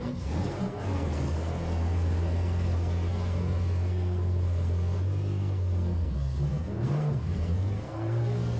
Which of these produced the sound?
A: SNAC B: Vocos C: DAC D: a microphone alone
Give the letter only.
A